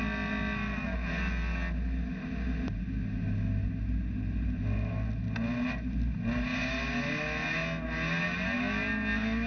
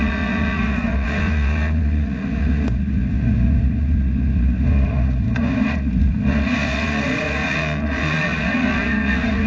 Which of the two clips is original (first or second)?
first